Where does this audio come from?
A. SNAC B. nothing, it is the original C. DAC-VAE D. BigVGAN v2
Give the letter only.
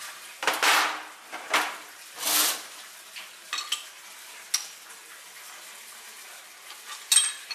B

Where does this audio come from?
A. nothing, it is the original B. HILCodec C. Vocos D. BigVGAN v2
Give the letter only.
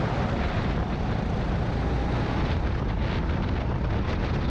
A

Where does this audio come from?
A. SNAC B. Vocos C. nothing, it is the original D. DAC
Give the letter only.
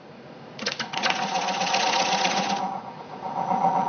B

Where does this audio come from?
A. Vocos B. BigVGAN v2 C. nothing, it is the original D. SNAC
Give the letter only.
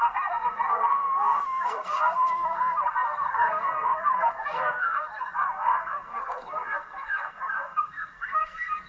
D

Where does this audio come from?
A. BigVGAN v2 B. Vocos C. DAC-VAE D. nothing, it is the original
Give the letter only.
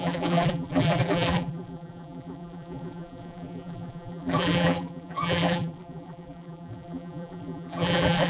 A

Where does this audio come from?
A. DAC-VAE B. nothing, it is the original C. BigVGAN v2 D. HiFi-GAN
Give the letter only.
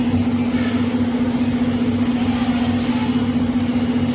B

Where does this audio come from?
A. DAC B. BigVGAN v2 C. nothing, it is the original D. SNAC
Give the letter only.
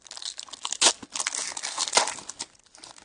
C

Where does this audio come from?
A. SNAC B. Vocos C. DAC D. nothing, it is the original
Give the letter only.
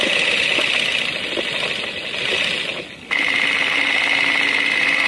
D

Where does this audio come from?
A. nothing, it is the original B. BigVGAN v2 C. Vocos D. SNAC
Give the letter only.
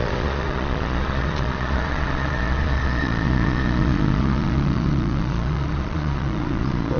C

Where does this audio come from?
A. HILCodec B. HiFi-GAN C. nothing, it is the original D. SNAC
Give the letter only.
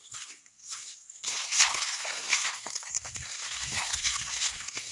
D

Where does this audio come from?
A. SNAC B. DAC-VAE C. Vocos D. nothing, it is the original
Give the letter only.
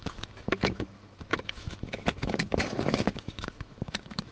B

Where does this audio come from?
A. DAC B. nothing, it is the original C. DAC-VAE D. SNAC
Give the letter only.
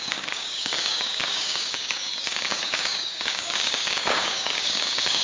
A